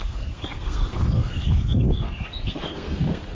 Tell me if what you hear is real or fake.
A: fake